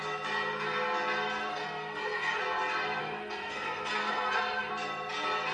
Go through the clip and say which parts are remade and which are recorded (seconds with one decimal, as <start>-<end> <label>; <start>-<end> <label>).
0.0-1.5 recorded; 1.5-2.4 remade; 2.4-3.0 recorded; 3.0-4.7 remade; 4.7-5.5 recorded